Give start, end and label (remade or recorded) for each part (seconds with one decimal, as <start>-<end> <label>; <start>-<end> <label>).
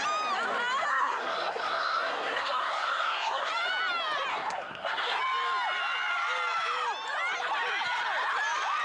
0.0-0.9 recorded; 0.9-3.5 remade; 3.5-4.3 recorded; 4.3-5.2 remade; 5.2-8.8 recorded